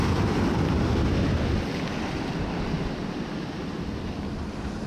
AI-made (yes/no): no